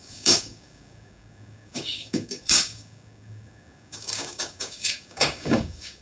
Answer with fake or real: fake